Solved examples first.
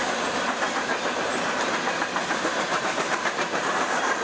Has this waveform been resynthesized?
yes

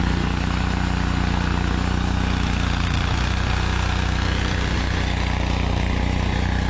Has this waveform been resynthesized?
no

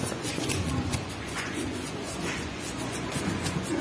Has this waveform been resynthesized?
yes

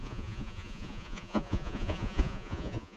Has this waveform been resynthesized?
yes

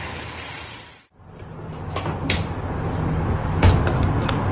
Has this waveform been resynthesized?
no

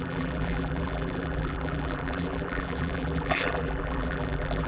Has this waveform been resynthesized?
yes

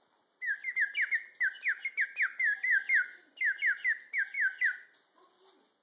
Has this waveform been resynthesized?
no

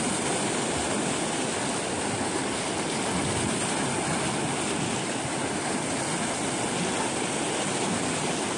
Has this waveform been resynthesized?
no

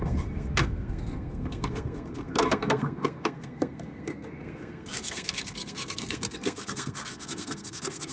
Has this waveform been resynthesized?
yes